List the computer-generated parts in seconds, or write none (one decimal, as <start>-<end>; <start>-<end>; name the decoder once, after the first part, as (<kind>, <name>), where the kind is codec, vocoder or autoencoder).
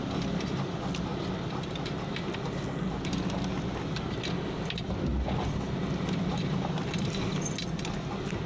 6.3-7.2 (vocoder, BigVGAN v2)